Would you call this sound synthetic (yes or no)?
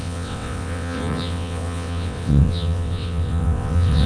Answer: yes